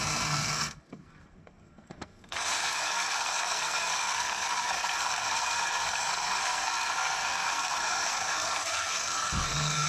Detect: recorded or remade remade